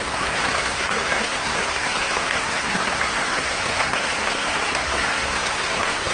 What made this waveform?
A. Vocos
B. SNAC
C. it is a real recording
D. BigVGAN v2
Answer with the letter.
B